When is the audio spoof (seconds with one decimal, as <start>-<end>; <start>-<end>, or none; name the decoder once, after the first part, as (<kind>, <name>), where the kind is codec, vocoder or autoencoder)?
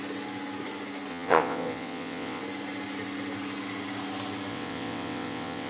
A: 1.1-2.4 (vocoder, WaveNeXt); 4.5-5.7